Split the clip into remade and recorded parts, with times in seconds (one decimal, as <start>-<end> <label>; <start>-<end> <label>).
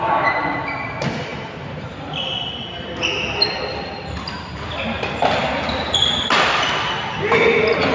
0.0-7.9 recorded